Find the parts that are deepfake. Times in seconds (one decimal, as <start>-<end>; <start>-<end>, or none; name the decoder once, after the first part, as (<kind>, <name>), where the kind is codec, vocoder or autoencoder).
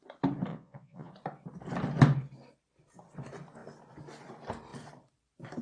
0.5-1.1 (vocoder, Vocos)